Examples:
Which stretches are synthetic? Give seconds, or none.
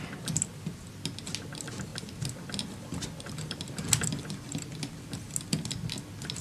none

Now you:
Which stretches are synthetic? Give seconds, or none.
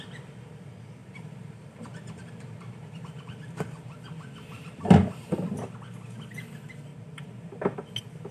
1.0-5.2 (vocoder, BigVGAN v2); 6.9-7.5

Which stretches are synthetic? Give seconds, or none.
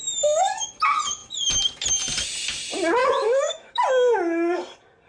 3.0-3.8 (autoencoder, DAC-VAE)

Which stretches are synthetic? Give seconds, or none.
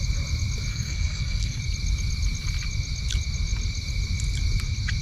0.7-1.6 (codec, SNAC)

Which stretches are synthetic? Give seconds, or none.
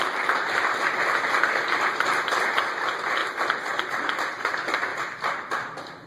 none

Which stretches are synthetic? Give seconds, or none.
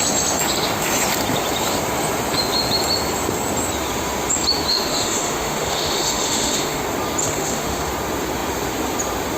4.7-6.8 (autoencoder, DAC-VAE); 7.2-7.9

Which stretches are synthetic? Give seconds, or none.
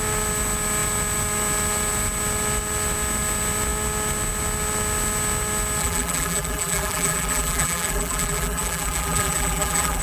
5.8-10.0 (vocoder, BigVGAN v2)